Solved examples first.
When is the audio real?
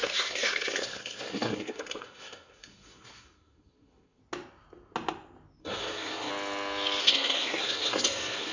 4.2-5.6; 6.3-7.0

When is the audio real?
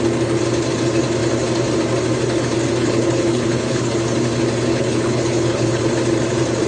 0.0-2.8; 3.9-4.7; 5.8-6.7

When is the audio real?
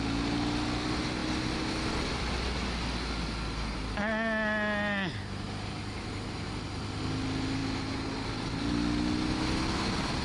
0.0-10.2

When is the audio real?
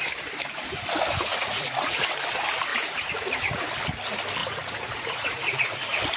0.0-1.3; 2.0-2.7; 3.7-4.4; 5.8-6.2